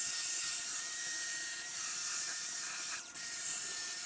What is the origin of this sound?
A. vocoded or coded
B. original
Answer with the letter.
A